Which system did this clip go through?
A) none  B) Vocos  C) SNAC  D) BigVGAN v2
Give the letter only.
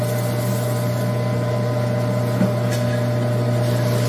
A